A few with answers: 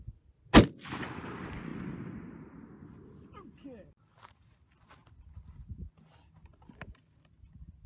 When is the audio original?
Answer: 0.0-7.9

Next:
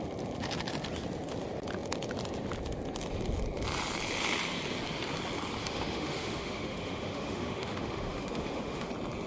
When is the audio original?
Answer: 0.0-5.6; 8.9-9.3

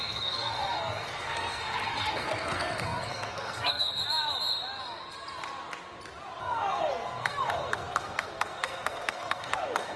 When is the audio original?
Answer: 4.0-6.4

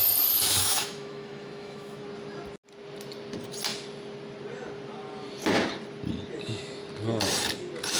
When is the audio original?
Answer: 0.0-0.6; 2.0-8.0